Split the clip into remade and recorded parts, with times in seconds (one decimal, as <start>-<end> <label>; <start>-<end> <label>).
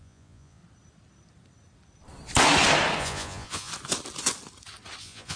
0.0-0.6 remade; 0.6-3.0 recorded; 3.0-3.7 remade; 3.7-5.0 recorded; 5.0-5.4 remade